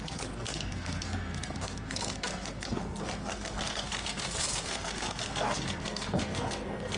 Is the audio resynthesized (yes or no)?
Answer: yes